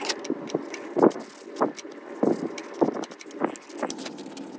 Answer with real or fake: real